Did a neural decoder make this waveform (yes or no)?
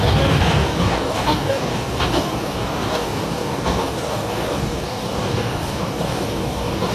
yes